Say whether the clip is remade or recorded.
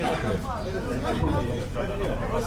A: recorded